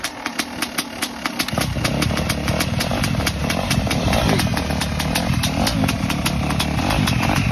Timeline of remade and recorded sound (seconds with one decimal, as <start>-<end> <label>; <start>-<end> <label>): 0.0-4.5 remade; 4.5-6.8 recorded; 6.8-7.5 remade